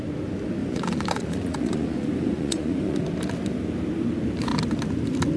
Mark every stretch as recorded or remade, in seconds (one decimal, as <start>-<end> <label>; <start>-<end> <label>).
0.0-0.6 recorded; 0.6-3.0 remade; 3.0-5.4 recorded